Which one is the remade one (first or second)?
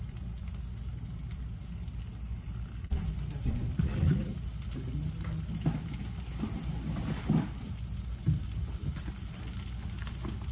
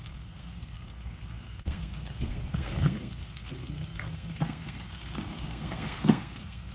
second